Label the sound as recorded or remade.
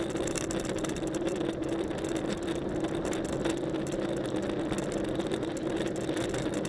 recorded